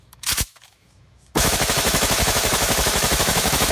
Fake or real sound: fake